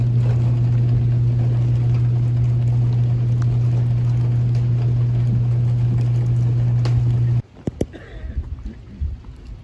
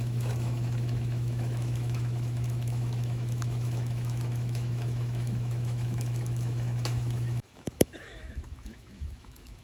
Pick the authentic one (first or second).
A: first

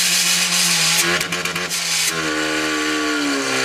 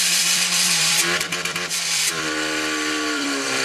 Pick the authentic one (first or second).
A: first